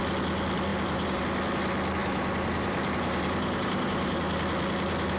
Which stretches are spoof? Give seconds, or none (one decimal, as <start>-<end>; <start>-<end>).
0.7-1.2; 2.0-4.2